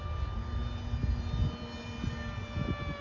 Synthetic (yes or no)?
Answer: no